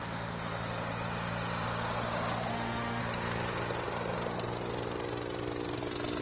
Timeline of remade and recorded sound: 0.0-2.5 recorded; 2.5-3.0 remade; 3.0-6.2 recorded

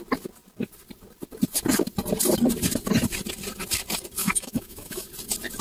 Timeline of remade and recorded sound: 0.0-4.2 recorded; 4.2-5.1 remade; 5.1-5.6 recorded